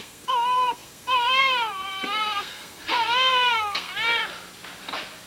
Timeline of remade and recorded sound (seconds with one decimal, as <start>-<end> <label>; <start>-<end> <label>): 0.0-4.2 remade; 4.2-5.3 recorded